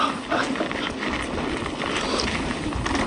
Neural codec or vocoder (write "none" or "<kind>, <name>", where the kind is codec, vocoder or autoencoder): none